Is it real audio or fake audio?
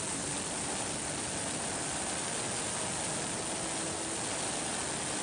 real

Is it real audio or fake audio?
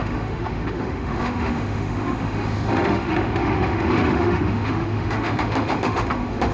fake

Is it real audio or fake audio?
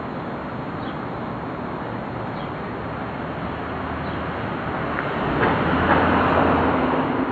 real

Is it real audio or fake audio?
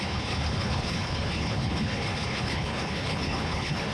fake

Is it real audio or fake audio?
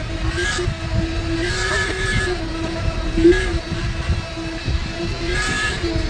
fake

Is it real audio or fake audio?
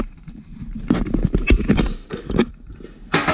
fake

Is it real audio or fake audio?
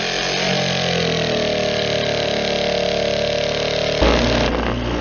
real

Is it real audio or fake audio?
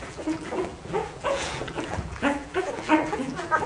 fake